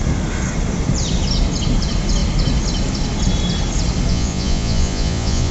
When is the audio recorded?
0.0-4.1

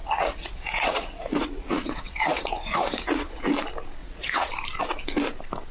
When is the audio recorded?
3.4-4.0; 4.5-5.7